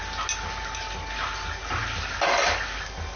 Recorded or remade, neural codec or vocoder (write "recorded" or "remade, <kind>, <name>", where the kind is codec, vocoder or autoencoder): recorded